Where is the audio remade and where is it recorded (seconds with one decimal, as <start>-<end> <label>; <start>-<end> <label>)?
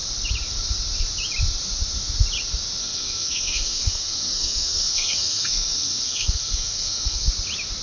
0.0-2.8 recorded; 2.8-7.3 remade; 7.3-7.8 recorded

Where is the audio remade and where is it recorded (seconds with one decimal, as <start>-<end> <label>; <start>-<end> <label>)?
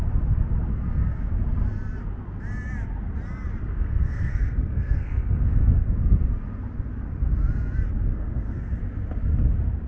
0.0-3.7 recorded; 3.7-5.8 remade; 5.8-8.1 recorded; 8.1-8.8 remade; 8.8-9.9 recorded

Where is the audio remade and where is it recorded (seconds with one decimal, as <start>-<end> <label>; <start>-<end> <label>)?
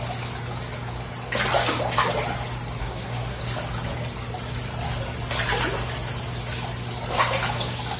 0.0-2.8 recorded; 2.8-3.4 remade; 3.4-8.0 recorded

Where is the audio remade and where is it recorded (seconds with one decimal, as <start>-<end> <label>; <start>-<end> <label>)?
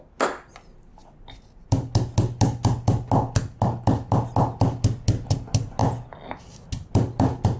0.0-7.6 recorded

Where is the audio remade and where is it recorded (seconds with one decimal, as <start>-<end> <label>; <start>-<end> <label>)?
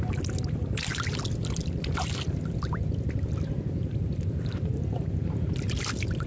0.0-6.3 recorded